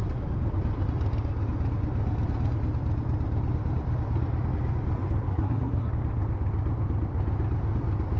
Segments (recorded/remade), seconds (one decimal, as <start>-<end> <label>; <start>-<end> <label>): 0.0-5.3 recorded; 5.3-5.9 remade; 5.9-8.2 recorded